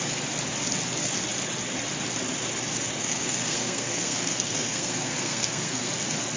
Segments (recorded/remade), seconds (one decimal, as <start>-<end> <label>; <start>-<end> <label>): 0.0-3.0 recorded; 3.0-5.9 remade; 5.9-6.4 recorded